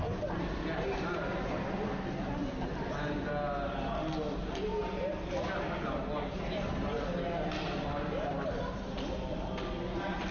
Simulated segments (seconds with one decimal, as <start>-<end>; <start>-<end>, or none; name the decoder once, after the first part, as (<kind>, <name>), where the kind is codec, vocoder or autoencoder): none